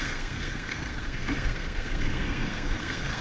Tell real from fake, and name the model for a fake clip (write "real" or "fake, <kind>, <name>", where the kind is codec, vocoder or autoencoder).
fake, codec, SNAC